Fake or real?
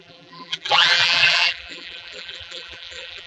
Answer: fake